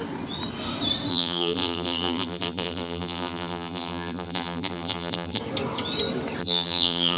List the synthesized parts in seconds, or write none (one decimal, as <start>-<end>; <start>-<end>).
1.1-5.4; 6.4-7.2